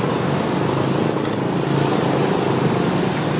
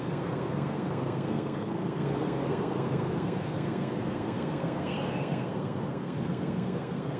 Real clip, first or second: first